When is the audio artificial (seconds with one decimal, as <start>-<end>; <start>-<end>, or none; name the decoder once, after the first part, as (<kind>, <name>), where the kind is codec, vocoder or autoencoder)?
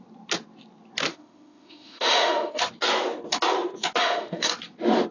1.1-2.6 (autoencoder, DAC-VAE); 4.0-4.5